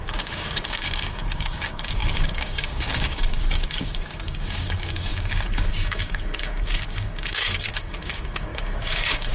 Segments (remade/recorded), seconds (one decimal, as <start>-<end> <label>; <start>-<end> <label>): 0.0-9.3 remade

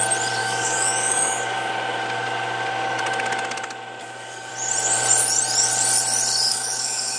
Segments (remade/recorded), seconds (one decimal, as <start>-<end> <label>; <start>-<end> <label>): 0.0-0.4 recorded; 0.4-1.7 remade; 1.7-4.0 recorded; 4.0-4.5 remade; 4.5-6.5 recorded; 6.5-7.2 remade

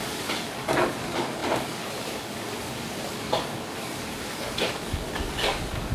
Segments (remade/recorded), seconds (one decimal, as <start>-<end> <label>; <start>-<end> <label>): 0.0-5.9 remade

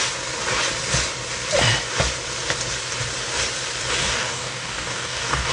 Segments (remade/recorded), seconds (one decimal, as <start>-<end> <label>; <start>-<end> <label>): 0.0-4.0 recorded; 4.0-5.5 remade